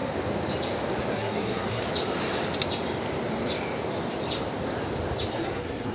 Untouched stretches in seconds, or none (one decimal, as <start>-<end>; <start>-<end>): 0.0-1.1; 1.8-5.3